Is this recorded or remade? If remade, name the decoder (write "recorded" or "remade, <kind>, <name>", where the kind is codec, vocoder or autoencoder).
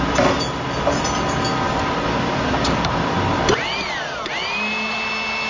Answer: recorded